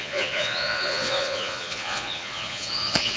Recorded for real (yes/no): no